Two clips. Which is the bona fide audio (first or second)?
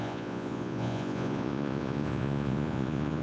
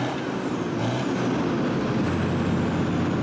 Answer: second